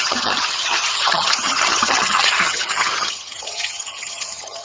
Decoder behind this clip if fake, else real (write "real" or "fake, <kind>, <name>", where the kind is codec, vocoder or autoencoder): fake, vocoder, HiFi-GAN